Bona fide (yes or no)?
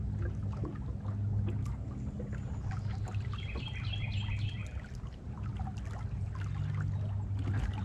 yes